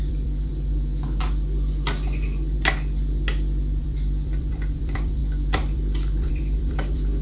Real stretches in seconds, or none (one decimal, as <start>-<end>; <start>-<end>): 0.5-3.8